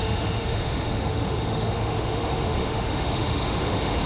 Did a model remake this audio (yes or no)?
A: yes